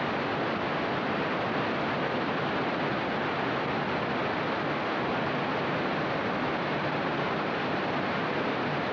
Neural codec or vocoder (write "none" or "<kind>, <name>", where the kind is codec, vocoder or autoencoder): none